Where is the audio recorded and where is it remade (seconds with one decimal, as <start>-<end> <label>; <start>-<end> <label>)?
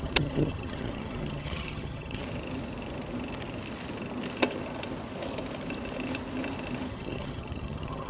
0.0-2.2 remade; 2.2-6.9 recorded; 6.9-8.1 remade